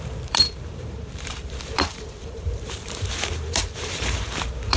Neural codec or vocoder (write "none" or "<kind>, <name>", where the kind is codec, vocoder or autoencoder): vocoder, BigVGAN v2